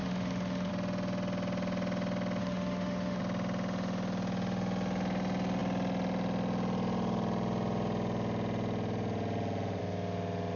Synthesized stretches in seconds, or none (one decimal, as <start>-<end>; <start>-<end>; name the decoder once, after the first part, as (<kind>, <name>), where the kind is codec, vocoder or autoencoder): 0.0-0.7 (autoencoder, DAC-VAE); 2.4-3.2

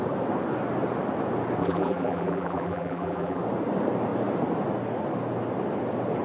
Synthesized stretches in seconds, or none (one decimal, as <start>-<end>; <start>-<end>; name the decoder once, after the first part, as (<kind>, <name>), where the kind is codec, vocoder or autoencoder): 1.6-3.4 (vocoder, BigVGAN v2)

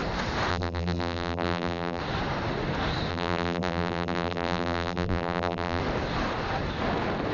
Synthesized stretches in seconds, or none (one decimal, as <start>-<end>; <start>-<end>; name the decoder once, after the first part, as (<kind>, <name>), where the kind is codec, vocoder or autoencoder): 0.5-2.0 (vocoder, BigVGAN v2); 3.1-5.8

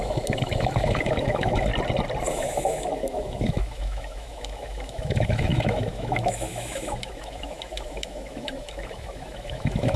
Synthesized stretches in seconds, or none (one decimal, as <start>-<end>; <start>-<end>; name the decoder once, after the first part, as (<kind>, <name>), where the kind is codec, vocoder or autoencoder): 0.0-1.7 (autoencoder, DAC-VAE); 2.3-10.0

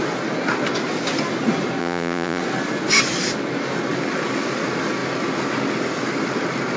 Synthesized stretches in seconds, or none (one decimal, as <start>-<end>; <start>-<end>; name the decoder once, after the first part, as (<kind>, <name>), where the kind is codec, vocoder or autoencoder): 1.8-2.4 (vocoder, Vocos)